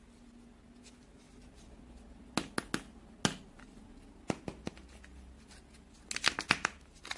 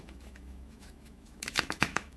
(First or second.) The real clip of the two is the first